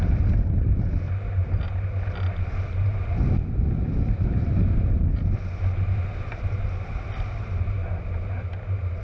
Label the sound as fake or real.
real